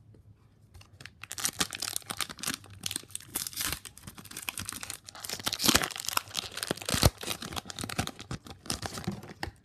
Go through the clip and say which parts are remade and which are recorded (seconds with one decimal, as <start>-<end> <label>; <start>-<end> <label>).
0.0-3.3 recorded; 3.3-4.6 remade; 4.6-6.9 recorded; 6.9-8.2 remade; 8.2-9.6 recorded